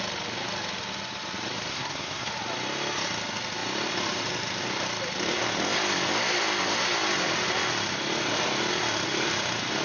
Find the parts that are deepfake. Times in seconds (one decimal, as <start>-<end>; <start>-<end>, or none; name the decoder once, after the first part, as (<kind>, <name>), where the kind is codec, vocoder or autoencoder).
1.7-2.3 (codec, SNAC)